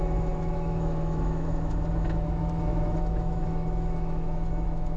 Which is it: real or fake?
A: fake